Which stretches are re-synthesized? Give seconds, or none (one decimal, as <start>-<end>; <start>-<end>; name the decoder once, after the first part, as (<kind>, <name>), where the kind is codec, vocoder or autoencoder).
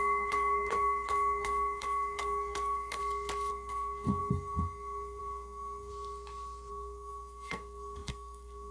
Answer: 0.0-3.0 (codec, SNAC); 3.5-5.9; 6.7-8.7